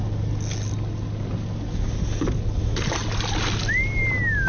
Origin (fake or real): real